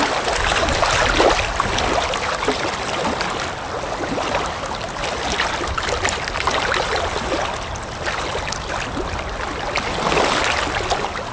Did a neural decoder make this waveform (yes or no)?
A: no